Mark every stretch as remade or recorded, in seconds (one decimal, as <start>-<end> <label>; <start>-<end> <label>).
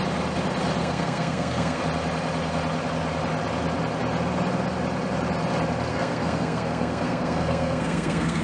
0.0-0.8 recorded; 0.8-1.8 remade; 1.8-5.9 recorded; 5.9-8.4 remade